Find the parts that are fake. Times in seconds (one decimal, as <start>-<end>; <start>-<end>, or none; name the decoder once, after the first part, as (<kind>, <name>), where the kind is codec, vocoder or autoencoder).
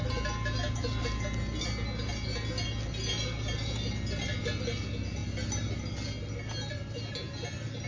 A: none